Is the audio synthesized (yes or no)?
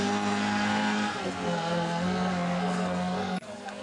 yes